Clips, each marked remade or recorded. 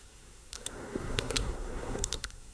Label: remade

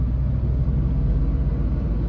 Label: recorded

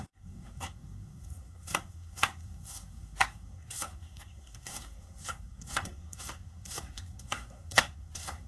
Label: remade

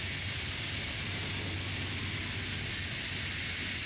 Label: recorded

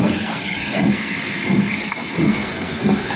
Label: remade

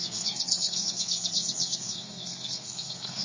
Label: remade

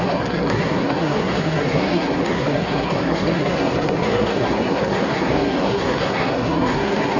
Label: remade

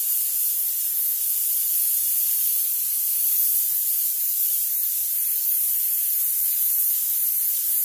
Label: recorded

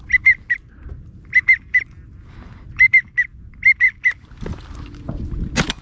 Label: recorded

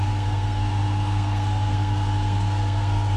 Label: remade